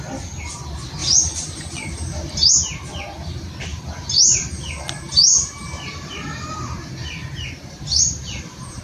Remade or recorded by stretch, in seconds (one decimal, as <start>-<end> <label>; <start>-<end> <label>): 0.0-1.0 recorded; 1.0-2.5 remade; 2.5-3.7 recorded; 3.7-8.8 remade